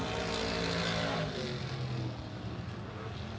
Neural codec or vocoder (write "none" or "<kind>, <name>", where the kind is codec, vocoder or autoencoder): none